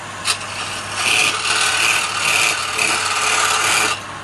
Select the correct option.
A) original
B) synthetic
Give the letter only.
A